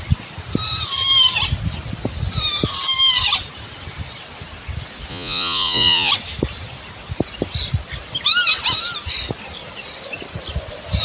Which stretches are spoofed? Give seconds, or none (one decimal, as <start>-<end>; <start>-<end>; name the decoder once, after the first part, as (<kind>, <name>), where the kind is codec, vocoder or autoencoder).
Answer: 5.1-6.1 (vocoder, Vocos)